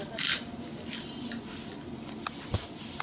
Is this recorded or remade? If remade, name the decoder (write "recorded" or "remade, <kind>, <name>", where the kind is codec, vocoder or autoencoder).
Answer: recorded